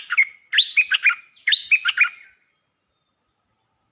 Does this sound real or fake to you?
real